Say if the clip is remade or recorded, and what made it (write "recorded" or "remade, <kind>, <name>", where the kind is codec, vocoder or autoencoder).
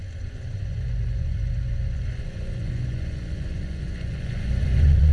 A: remade, vocoder, Vocos